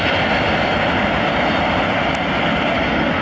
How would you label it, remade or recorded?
recorded